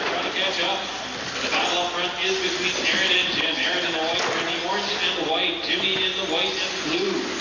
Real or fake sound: real